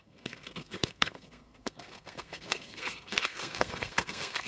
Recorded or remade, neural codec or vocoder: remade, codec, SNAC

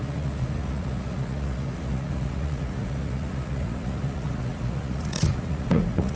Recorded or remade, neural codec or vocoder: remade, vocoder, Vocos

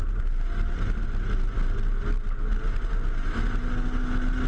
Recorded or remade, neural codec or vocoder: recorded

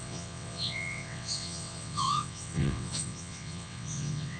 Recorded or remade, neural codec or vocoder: remade, vocoder, WaveNeXt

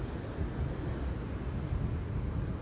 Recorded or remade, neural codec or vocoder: recorded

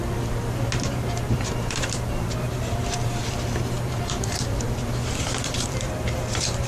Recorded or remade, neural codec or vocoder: remade, vocoder, BigVGAN v2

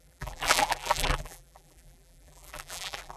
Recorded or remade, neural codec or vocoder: remade, vocoder, BigVGAN v2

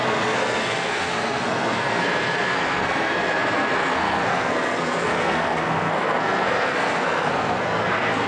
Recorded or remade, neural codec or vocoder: remade, codec, SNAC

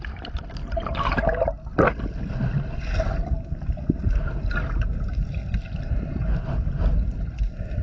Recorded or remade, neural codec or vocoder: recorded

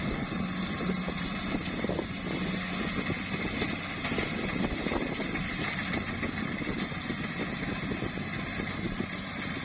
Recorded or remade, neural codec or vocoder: recorded